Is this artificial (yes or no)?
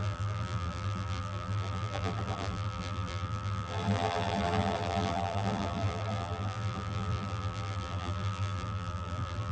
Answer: yes